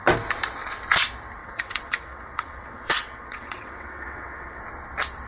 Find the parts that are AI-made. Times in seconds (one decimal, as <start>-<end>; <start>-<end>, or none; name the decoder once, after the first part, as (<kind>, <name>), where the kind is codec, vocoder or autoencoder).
1.4-4.6 (vocoder, WaveNeXt)